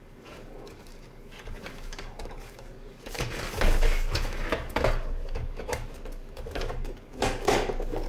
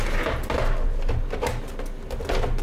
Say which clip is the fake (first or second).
first